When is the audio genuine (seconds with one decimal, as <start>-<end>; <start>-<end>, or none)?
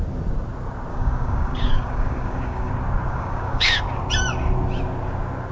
0.0-0.9; 2.7-3.1; 3.8-5.5